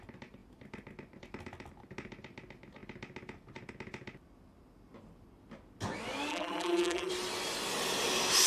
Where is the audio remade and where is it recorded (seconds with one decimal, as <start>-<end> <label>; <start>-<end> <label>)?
0.0-6.3 recorded; 6.3-7.1 remade; 7.1-8.5 recorded